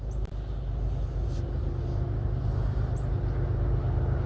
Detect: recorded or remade recorded